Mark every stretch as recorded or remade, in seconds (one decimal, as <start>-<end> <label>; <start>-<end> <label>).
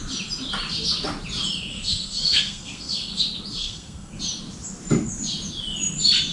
0.0-1.7 recorded; 1.7-3.2 remade; 3.2-3.6 recorded; 3.6-4.2 remade; 4.2-6.3 recorded